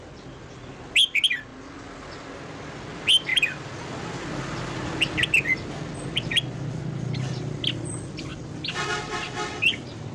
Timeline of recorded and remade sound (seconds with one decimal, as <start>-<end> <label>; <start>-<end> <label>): 0.0-10.1 recorded